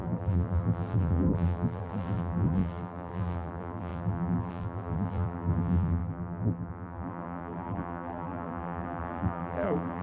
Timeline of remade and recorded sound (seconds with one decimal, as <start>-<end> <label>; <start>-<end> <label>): 0.0-10.0 remade